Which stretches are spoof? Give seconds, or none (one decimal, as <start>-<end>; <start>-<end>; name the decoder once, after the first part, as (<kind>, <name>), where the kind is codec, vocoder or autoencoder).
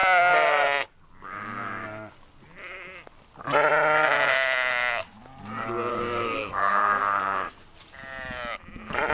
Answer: 5.9-7.5 (codec, SNAC)